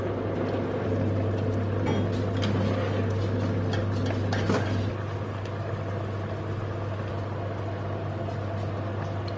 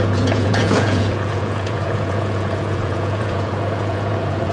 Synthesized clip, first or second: second